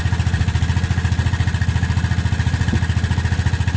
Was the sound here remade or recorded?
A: recorded